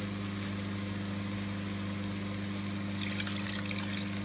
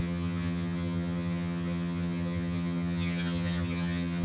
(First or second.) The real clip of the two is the first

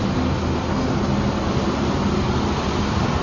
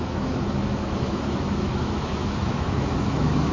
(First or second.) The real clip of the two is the first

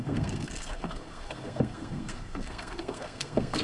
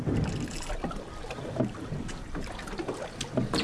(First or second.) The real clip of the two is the second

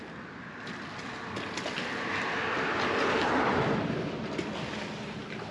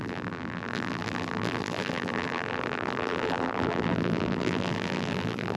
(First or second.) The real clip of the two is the first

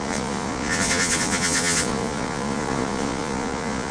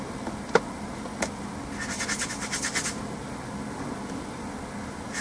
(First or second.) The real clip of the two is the second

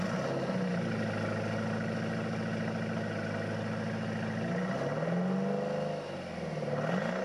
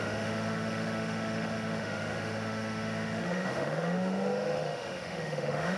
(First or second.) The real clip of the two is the first